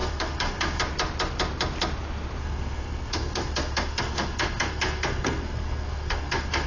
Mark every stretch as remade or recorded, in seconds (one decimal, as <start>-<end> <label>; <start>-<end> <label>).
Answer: 0.0-0.8 remade; 0.8-2.4 recorded; 2.4-6.7 remade